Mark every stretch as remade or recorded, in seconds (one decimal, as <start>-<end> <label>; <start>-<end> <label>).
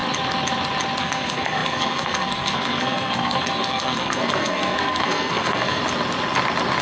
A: 0.0-1.0 recorded; 1.0-5.8 remade; 5.8-6.8 recorded